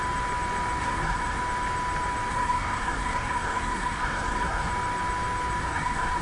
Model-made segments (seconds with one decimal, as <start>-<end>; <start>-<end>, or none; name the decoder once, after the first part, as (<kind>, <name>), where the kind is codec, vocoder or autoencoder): 0.8-1.4 (codec, SNAC); 2.3-4.7; 5.6-6.2